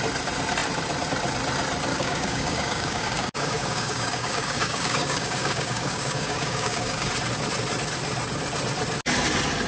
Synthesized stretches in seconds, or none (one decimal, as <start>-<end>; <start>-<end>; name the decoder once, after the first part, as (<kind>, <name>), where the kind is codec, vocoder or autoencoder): 1.9-7.1 (codec, DAC)